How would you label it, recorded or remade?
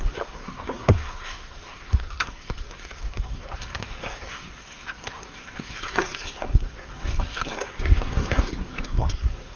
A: remade